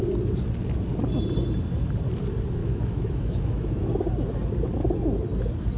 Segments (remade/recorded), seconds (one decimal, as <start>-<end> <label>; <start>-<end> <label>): 0.0-2.6 recorded; 2.6-3.8 remade; 3.8-5.8 recorded